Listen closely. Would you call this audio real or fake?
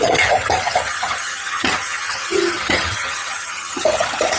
fake